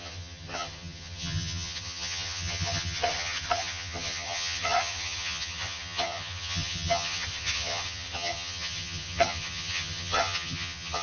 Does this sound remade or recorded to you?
remade